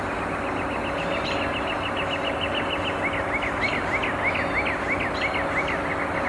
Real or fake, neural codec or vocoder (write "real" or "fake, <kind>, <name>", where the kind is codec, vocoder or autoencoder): real